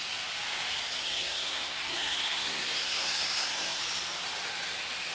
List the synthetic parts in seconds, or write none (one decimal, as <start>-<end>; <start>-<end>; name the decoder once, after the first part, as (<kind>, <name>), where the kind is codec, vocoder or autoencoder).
1.0-3.8 (codec, SNAC)